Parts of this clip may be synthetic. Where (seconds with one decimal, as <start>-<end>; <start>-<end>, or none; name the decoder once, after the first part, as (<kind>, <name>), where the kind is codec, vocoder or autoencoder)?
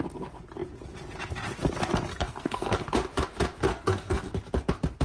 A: 2.1-2.8 (codec, SNAC); 3.7-4.3